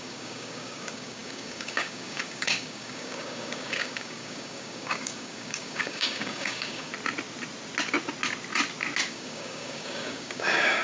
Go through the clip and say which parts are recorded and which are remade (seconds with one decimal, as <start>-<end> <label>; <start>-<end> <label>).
0.0-6.9 remade; 6.9-9.1 recorded; 9.1-10.8 remade